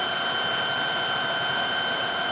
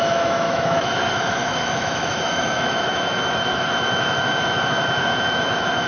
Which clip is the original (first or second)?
first